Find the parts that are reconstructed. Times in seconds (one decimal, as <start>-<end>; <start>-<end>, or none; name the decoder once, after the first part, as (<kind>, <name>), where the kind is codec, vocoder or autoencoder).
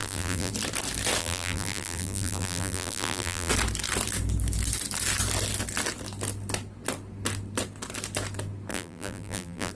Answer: 0.0-0.5 (vocoder, BigVGAN v2); 1.2-3.5; 8.7-9.7